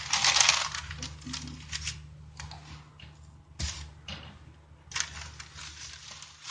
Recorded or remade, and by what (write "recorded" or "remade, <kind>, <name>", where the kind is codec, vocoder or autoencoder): recorded